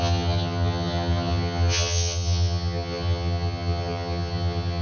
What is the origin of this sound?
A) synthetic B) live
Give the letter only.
A